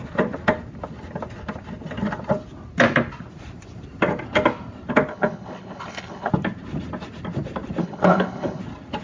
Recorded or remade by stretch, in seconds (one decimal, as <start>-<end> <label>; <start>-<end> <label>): 0.0-5.1 recorded; 5.1-6.3 remade; 6.3-7.8 recorded; 7.8-8.6 remade; 8.6-9.0 recorded